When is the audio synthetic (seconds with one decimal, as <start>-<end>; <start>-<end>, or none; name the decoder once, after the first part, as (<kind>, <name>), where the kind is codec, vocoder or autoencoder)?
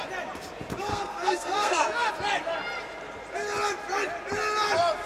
0.9-2.1 (codec, SNAC)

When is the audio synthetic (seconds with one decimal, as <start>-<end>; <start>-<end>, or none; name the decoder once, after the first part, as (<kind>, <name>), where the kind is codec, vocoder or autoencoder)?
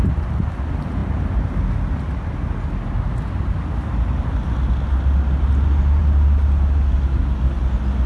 none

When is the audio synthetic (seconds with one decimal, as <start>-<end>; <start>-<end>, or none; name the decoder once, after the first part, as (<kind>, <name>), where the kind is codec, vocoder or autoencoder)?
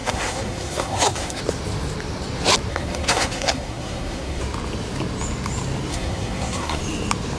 0.0-1.4 (codec, SNAC); 2.7-4.4; 5.9-6.8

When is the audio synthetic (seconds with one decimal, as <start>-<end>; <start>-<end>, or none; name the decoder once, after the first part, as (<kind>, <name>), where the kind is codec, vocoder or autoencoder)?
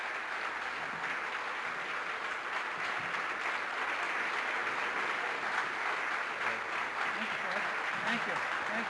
none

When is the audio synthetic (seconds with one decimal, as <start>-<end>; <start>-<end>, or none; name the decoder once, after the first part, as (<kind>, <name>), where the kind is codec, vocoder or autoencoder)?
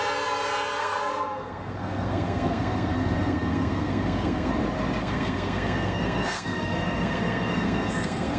0.8-4.5 (codec, SNAC); 5.0-8.4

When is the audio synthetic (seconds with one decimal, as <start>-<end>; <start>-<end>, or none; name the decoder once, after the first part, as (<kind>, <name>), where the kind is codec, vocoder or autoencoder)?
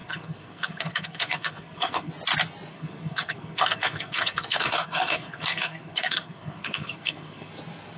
0.0-2.1 (codec, SNAC); 2.7-7.5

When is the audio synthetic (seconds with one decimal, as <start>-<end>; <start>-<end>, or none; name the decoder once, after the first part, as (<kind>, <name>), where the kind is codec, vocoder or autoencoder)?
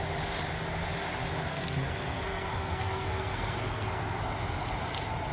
1.5-4.2 (codec, SNAC)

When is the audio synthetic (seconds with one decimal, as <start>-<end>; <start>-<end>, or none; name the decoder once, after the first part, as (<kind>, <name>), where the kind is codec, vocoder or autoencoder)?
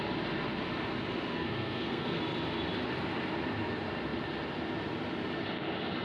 1.3-2.2 (codec, SNAC)